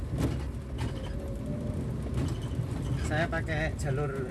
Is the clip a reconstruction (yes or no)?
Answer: no